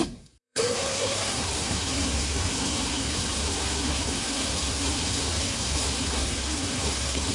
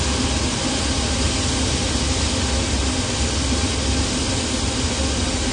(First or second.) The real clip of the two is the second